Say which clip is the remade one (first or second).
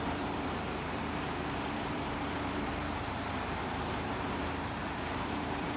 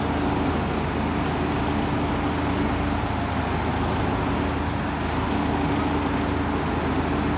first